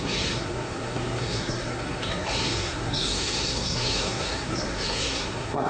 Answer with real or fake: fake